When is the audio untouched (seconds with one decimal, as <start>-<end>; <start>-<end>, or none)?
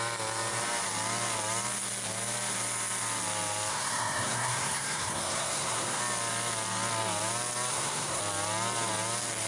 0.0-3.7; 6.0-7.7; 8.2-9.5